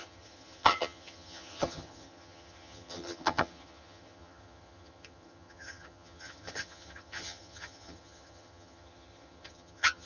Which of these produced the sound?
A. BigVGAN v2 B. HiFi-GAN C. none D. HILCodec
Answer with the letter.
B